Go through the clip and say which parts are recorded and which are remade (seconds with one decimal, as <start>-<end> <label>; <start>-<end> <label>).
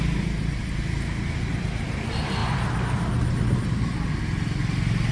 0.0-5.1 recorded